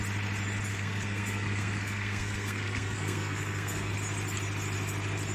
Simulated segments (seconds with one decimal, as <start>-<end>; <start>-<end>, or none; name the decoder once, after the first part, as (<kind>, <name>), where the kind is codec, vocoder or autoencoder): 0.7-3.9 (codec, SNAC)